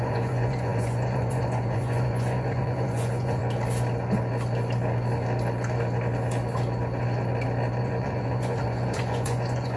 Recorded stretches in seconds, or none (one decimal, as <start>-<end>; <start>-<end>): 3.4-7.8